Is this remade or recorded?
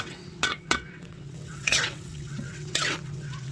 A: remade